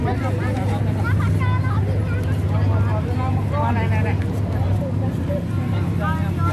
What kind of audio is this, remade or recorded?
recorded